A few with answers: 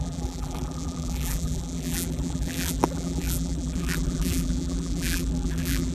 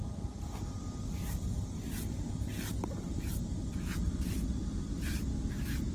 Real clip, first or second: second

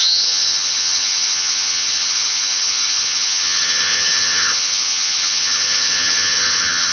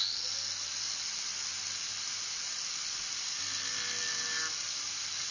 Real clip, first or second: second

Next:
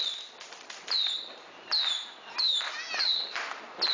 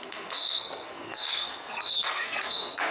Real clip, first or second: first